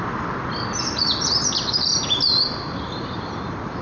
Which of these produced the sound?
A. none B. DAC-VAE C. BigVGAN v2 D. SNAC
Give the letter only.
C